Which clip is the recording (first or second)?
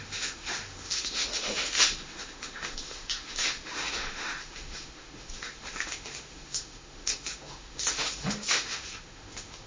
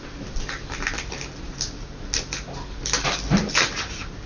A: second